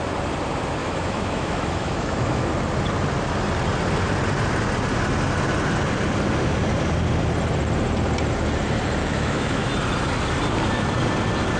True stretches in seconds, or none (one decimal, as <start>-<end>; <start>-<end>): 0.0-0.8; 2.5-9.0; 9.7-11.6